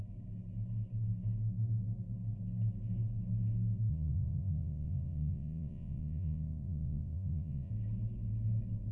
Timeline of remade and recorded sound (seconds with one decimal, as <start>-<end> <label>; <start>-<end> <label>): 0.0-3.9 recorded; 3.9-7.7 remade; 7.7-8.9 recorded